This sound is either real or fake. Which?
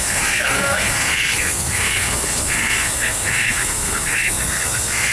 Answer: fake